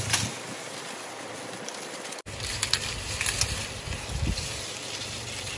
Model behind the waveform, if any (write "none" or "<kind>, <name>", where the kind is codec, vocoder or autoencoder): none